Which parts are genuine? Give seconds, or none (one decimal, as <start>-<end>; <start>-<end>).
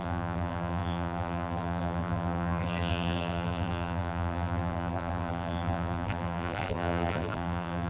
none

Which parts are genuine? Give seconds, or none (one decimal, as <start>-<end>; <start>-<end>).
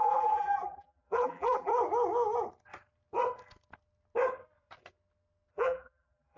1.7-5.5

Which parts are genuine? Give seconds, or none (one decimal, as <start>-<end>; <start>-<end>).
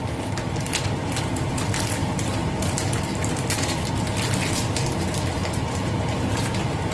0.0-6.9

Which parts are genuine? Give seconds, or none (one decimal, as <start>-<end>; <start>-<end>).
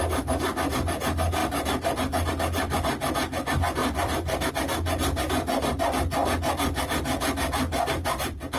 0.0-1.4; 2.3-3.8; 4.5-8.6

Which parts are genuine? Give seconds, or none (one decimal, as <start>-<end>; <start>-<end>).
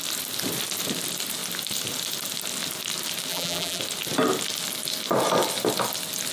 0.0-3.3; 3.8-6.3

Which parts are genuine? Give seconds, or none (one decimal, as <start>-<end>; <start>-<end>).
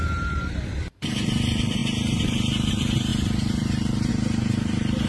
none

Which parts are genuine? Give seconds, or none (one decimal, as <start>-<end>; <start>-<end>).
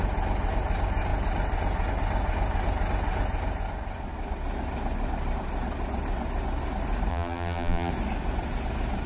0.0-7.1; 7.9-9.1